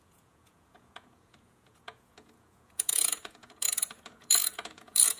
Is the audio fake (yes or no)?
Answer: yes